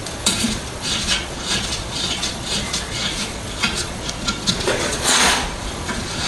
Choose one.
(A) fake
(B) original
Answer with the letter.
A